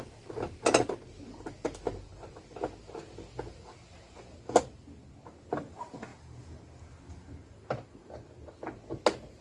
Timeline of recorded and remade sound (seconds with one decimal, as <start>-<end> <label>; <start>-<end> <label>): 0.0-9.4 recorded